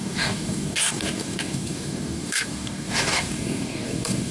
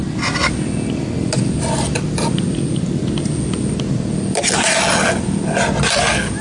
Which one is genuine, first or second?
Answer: second